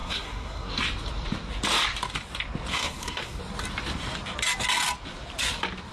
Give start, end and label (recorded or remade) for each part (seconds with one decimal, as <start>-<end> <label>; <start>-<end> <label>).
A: 0.0-0.7 remade; 0.7-2.7 recorded; 2.7-3.4 remade; 3.4-5.9 recorded